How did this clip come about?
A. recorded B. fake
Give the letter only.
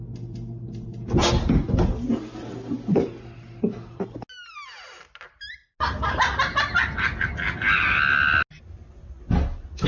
A